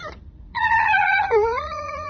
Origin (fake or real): fake